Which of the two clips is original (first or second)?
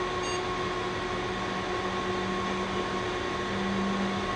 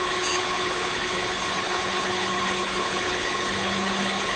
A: first